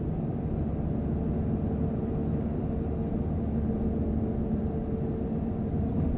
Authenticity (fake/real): real